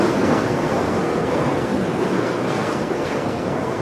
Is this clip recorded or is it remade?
remade